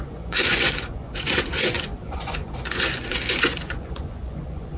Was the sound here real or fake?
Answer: fake